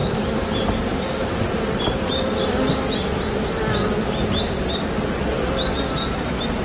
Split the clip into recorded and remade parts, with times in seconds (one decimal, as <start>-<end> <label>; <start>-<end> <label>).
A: 0.0-6.6 recorded